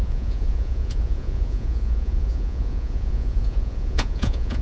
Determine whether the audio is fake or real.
fake